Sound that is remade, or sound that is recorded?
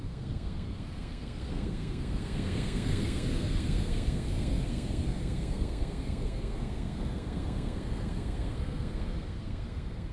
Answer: remade